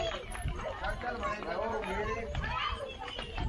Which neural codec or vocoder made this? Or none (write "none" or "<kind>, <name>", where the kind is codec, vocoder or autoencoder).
none